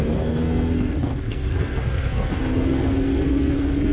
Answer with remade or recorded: remade